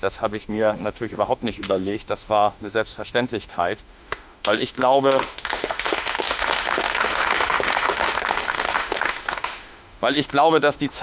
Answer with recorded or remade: remade